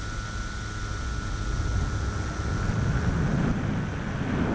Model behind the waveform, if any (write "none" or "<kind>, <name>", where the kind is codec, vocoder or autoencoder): none